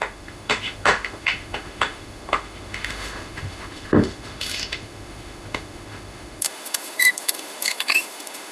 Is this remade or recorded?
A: remade